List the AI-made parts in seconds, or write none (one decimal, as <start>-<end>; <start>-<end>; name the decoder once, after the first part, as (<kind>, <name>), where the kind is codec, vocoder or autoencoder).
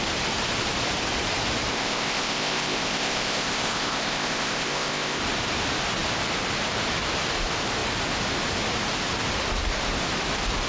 1.7-5.2 (codec, ZipCodec)